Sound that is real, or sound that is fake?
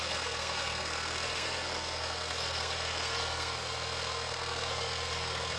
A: fake